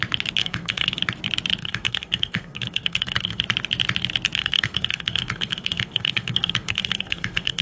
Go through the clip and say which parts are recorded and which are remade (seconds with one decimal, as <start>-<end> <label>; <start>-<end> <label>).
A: 0.0-0.4 recorded; 0.4-1.0 remade; 1.0-1.6 recorded; 1.6-3.4 remade; 3.4-4.4 recorded; 4.4-7.6 remade